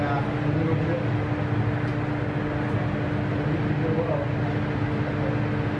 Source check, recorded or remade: recorded